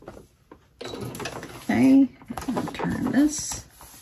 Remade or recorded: recorded